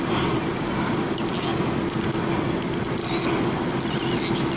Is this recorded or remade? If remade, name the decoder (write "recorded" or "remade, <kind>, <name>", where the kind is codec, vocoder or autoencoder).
recorded